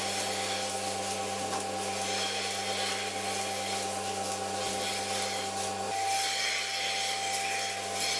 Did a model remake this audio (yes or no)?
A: no